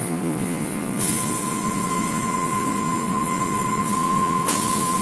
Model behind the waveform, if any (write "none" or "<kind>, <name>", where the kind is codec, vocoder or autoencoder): vocoder, Vocos